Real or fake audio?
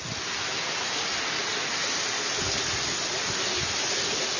real